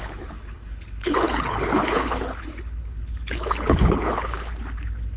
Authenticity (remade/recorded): remade